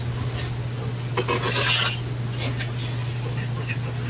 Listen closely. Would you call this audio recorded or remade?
recorded